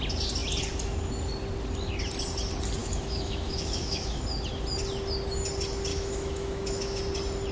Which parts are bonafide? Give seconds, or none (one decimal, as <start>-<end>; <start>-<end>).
0.0-2.8; 4.2-5.9; 7.0-7.5